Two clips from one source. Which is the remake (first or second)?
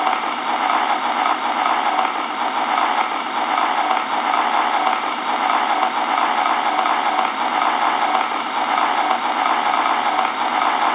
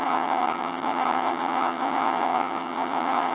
second